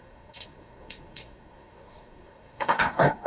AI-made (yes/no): yes